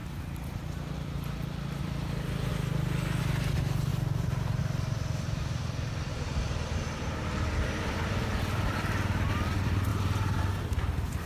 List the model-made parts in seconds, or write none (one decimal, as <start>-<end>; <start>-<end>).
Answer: 0.0-2.5; 3.2-9.9; 10.4-11.3